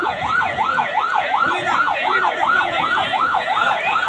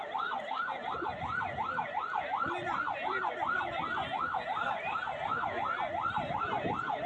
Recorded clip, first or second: second